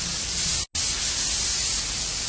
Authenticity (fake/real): real